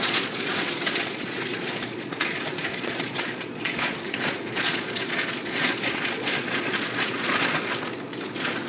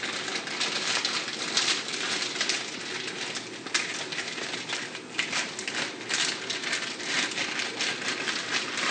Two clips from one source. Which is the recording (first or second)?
second